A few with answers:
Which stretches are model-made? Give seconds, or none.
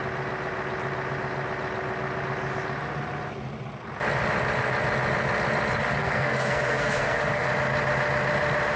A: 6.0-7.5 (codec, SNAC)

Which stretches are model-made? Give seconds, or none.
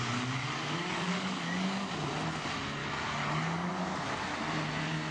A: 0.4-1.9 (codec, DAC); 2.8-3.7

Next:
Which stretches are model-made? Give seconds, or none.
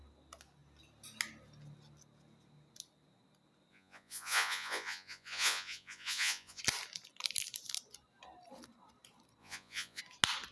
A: 3.7-6.6 (vocoder, Vocos); 9.4-10.0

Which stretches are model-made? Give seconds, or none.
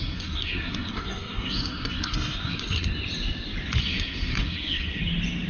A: 0.0-2.9 (codec, SNAC); 3.8-5.0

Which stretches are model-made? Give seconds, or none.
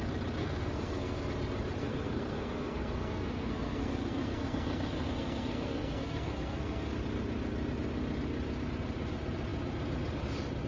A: 0.4-1.2 (codec, SNAC); 1.8-6.9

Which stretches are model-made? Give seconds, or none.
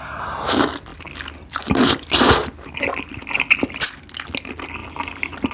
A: none